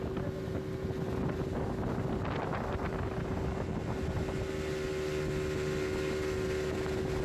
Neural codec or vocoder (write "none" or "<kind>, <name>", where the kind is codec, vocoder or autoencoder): none